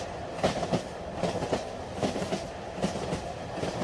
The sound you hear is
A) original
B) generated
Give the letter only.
A